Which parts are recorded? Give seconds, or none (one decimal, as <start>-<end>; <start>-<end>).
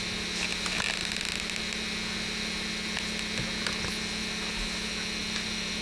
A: 0.0-5.8